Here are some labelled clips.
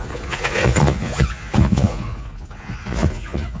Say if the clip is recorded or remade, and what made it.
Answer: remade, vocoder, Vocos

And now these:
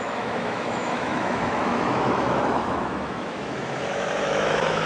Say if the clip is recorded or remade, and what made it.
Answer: remade, autoencoder, DAC-VAE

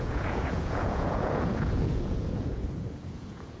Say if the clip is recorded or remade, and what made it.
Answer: remade, vocoder, Vocos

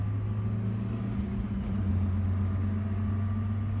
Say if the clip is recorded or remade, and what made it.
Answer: recorded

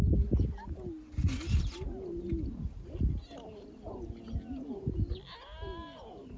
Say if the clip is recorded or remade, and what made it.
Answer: recorded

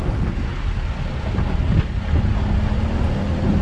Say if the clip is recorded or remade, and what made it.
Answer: recorded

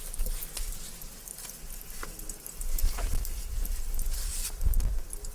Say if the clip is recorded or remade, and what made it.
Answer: recorded